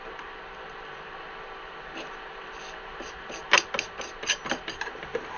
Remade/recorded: recorded